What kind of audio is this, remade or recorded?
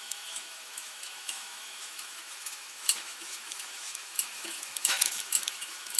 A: remade